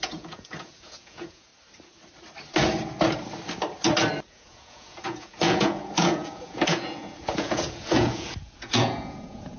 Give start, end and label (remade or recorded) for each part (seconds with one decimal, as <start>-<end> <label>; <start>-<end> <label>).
0.0-1.5 remade; 1.5-4.3 recorded; 4.3-9.6 remade